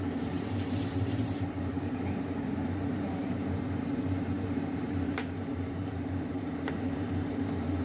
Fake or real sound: fake